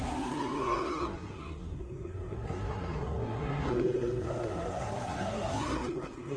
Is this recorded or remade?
remade